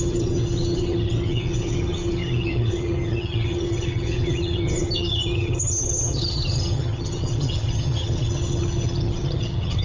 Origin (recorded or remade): remade